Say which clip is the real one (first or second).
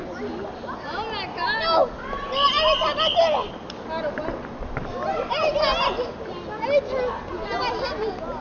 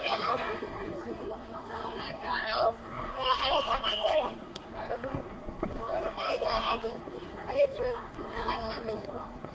first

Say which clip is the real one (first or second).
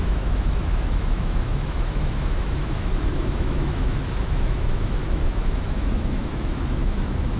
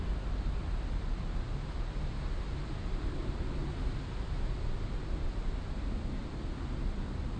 second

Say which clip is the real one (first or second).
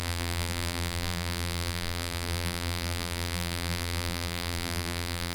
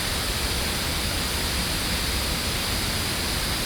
second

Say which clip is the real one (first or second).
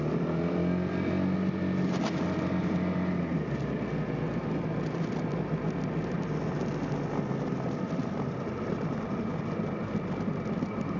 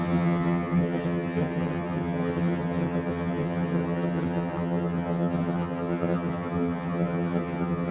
first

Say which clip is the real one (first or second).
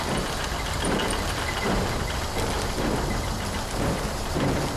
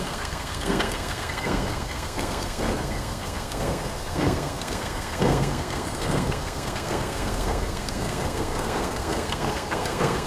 first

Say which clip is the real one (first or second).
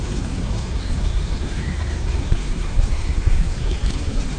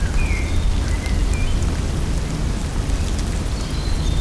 second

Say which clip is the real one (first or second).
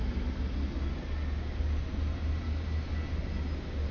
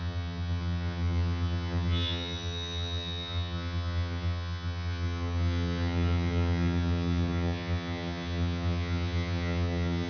first